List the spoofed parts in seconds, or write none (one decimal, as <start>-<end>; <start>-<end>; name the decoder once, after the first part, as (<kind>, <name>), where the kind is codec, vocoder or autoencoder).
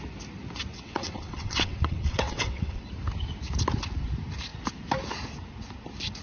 0.7-2.9 (vocoder, WaveNeXt)